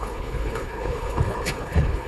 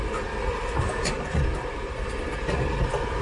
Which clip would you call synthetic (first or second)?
first